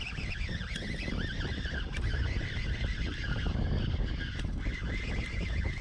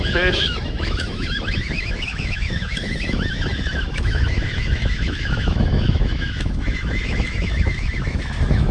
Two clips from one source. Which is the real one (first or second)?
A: first